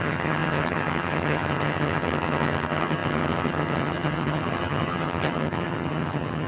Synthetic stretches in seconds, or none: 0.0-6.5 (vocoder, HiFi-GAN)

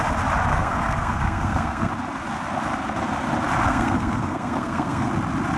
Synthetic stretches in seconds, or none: 0.5-1.9 (codec, SNAC); 3.7-5.1

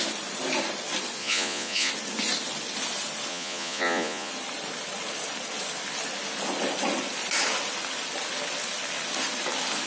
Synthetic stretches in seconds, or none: 1.2-1.9 (vocoder, Vocos); 3.3-4.3

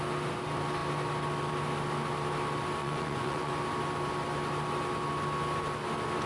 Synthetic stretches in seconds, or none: 2.8-3.5 (vocoder, Vocos)